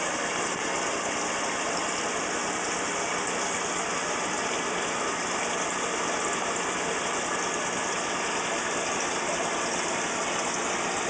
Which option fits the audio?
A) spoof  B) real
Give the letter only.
B